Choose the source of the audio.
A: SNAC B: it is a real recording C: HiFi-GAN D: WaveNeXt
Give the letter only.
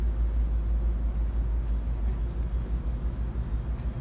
B